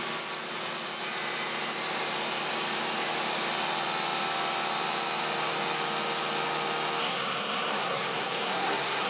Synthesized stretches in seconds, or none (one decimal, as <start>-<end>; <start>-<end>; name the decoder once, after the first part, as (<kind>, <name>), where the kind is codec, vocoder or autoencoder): 7.0-9.1 (codec, SNAC)